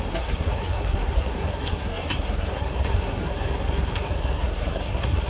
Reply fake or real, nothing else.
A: fake